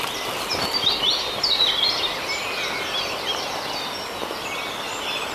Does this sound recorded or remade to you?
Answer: recorded